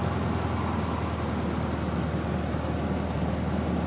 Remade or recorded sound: recorded